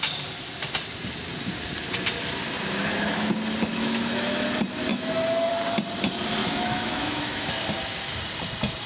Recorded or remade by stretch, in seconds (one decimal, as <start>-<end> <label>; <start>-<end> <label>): 0.0-2.8 recorded; 2.8-3.3 remade; 3.3-3.7 recorded; 3.7-4.3 remade; 4.3-4.9 recorded; 4.9-5.5 remade; 5.5-6.4 recorded; 6.4-7.5 remade; 7.5-8.9 recorded